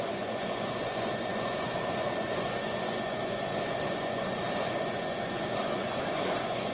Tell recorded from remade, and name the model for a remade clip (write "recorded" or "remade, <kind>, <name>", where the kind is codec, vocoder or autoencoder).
remade, vocoder, Vocos